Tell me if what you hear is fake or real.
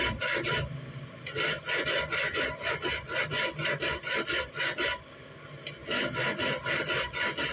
real